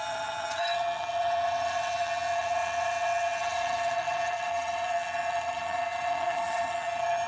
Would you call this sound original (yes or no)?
no